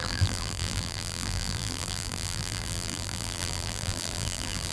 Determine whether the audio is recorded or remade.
remade